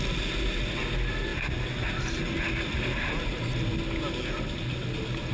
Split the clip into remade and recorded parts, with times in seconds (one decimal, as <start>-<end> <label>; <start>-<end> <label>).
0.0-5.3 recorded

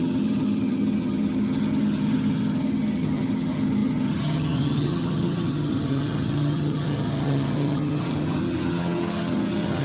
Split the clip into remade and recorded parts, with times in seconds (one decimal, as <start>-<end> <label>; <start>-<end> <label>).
0.0-9.8 remade

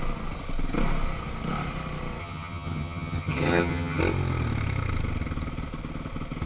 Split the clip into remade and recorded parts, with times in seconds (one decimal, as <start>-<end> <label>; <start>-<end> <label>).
0.0-2.2 recorded; 2.2-4.0 remade; 4.0-6.5 recorded

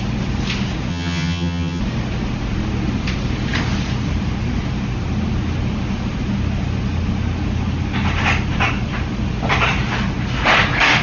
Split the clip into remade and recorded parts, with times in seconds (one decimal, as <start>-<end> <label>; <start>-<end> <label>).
0.0-0.9 recorded; 0.9-1.8 remade; 1.8-11.0 recorded